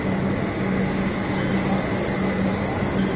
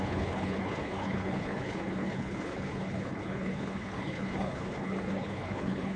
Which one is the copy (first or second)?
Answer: second